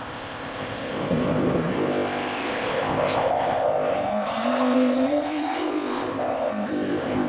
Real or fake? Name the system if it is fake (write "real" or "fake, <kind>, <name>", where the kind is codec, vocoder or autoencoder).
fake, codec, ZipCodec